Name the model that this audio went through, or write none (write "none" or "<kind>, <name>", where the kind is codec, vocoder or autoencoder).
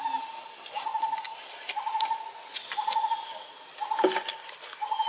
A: none